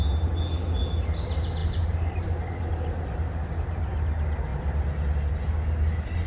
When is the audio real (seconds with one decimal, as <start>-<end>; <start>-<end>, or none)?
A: 0.0-1.6; 4.0-4.5; 5.3-6.3